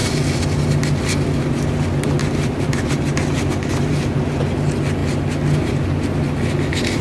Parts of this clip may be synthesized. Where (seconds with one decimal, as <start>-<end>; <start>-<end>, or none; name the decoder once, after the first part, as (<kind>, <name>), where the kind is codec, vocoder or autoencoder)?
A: none